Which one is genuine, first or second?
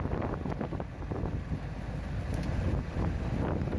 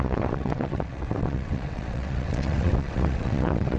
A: first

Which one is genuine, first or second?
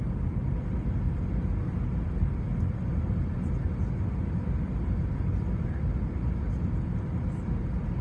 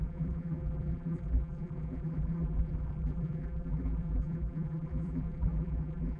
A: first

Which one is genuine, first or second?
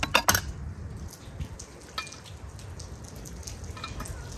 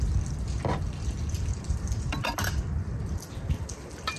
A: first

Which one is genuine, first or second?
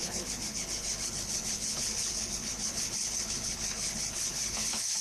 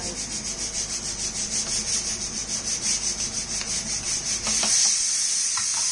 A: second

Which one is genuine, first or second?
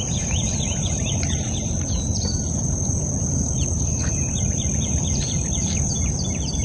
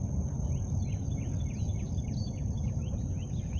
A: second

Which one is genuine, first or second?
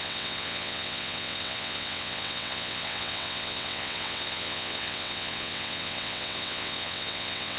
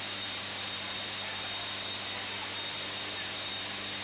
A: second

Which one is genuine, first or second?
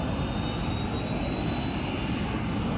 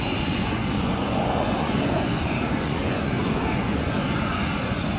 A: first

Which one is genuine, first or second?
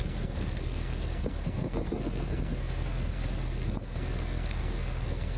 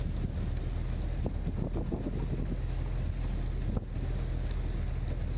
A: second